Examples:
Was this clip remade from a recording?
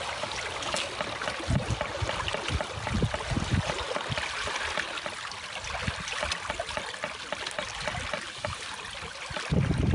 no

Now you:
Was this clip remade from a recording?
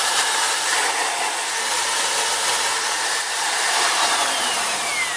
no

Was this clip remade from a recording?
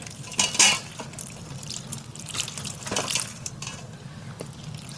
no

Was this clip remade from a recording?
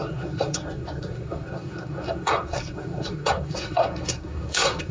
yes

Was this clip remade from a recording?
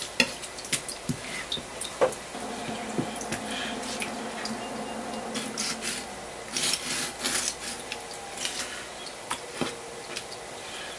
no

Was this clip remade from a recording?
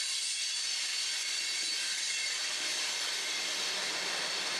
no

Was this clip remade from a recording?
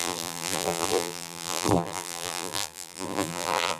yes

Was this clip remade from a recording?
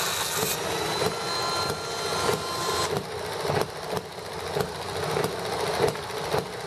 no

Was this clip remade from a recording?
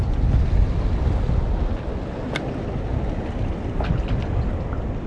no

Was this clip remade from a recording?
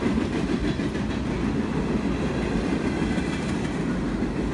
no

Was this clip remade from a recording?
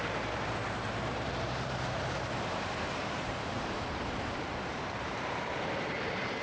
yes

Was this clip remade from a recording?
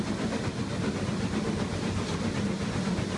no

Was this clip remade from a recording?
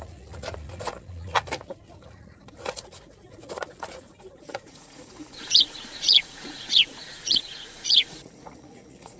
yes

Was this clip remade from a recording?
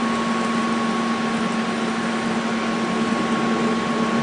yes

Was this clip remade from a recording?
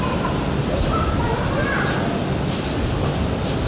no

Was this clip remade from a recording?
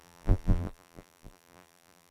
yes